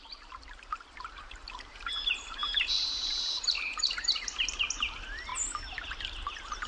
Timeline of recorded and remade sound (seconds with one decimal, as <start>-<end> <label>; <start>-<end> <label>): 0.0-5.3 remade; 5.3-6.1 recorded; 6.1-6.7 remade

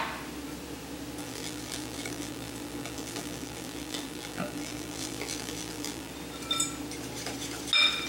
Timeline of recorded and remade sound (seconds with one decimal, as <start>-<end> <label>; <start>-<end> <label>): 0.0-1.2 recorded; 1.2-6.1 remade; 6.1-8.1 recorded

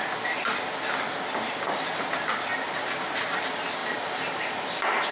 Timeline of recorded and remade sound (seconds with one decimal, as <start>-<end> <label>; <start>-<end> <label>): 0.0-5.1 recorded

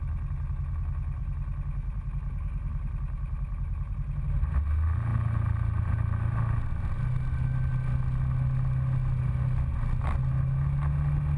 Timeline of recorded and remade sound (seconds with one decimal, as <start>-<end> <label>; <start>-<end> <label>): 0.0-11.4 recorded